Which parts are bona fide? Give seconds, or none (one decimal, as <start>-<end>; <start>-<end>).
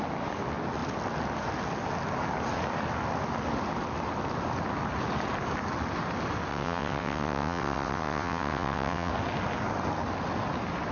0.0-6.5; 9.1-10.9